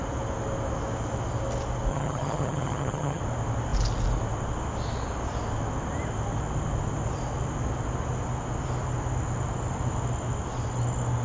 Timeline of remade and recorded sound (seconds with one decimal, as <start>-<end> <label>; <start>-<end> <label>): 0.0-1.9 recorded; 1.9-3.2 remade; 3.2-11.2 recorded